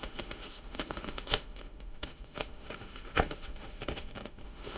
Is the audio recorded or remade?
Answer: remade